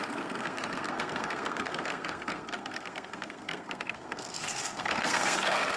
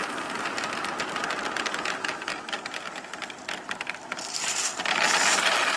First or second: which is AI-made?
first